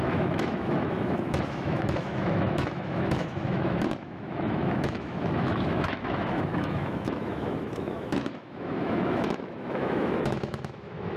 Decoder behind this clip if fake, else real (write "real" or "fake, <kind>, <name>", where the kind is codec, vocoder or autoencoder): fake, autoencoder, DAC-VAE